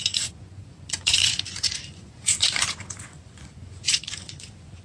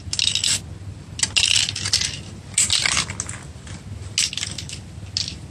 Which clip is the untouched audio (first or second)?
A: second